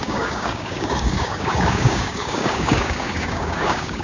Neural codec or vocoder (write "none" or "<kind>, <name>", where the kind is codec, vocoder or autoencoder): codec, DAC